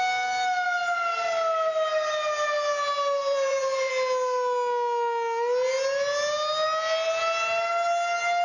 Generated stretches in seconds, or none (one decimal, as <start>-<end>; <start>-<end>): 3.2-3.9